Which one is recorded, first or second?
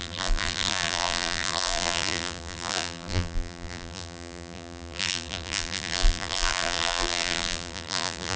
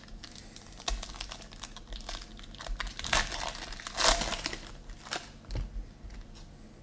second